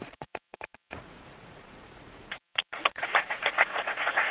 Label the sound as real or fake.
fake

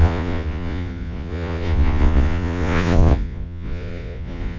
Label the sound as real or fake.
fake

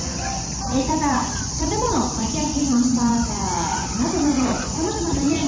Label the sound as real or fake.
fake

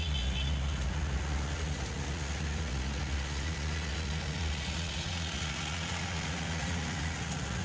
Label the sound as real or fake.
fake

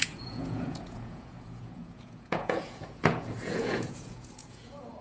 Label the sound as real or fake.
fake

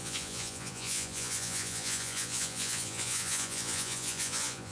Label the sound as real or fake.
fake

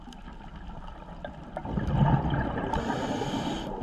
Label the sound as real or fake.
real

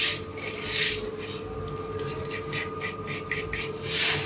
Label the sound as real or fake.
real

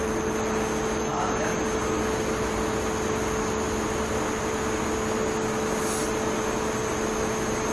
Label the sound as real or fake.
real